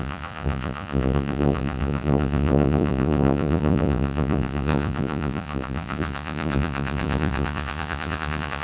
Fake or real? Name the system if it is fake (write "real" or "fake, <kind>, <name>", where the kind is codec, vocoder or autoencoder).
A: fake, vocoder, Vocos